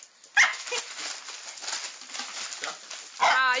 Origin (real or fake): real